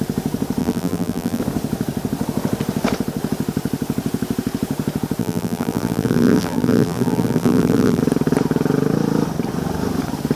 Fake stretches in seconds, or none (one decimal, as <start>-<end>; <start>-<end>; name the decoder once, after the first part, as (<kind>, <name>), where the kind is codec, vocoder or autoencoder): 0.6-1.4 (vocoder, BigVGAN v2); 5.2-8.0